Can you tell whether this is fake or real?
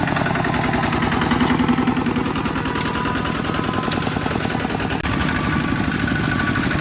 real